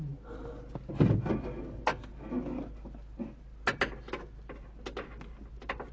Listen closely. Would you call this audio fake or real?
real